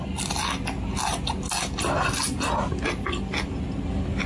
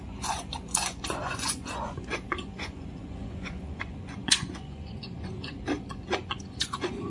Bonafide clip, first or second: first